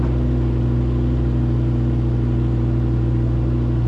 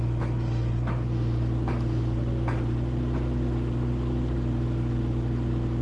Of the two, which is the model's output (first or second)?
first